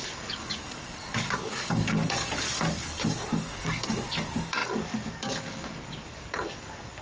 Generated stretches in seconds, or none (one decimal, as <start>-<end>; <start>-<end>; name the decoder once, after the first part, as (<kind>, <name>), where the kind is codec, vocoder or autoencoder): 0.0-7.0 (codec, DAC)

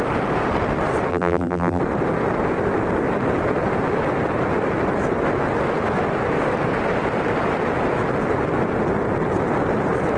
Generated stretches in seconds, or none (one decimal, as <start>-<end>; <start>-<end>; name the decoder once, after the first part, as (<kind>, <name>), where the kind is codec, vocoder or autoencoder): 1.1-1.8 (vocoder, BigVGAN v2)

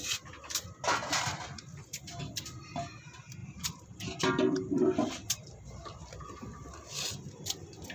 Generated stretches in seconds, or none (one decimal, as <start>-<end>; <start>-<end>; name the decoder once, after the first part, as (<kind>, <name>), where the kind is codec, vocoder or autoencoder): none